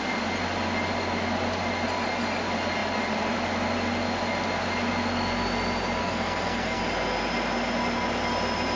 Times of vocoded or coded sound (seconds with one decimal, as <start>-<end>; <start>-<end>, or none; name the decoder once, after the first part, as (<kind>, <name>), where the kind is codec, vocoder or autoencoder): 6.0-6.8 (codec, SNAC)